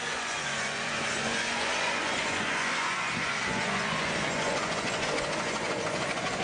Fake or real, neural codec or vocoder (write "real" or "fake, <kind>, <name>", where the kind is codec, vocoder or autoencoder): fake, vocoder, Vocos